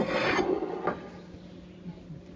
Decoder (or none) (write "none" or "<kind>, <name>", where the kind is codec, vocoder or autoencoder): none